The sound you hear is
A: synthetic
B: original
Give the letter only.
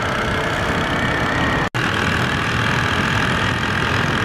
B